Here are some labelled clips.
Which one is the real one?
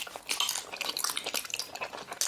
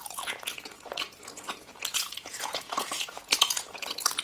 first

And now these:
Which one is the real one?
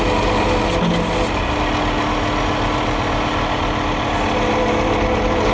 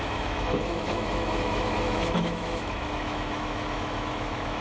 first